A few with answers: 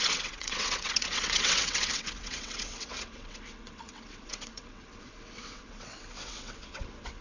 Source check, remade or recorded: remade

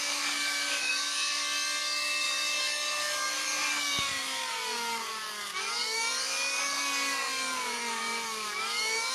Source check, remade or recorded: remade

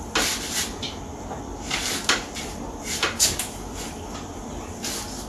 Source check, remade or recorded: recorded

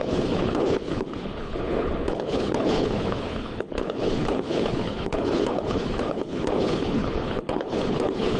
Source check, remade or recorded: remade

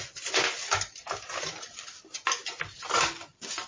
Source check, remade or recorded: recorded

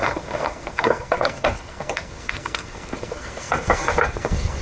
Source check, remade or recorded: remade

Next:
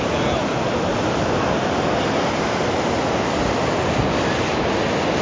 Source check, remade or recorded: recorded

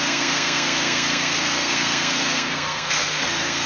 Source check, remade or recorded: remade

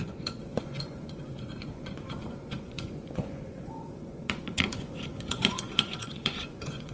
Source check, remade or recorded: remade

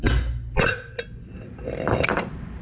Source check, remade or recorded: recorded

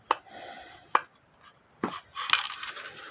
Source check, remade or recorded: recorded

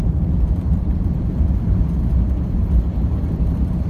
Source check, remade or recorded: remade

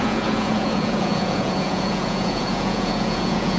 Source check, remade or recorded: remade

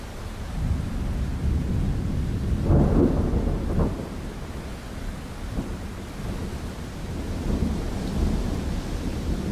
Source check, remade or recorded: remade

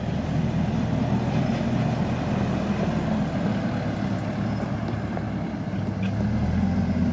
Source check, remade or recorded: recorded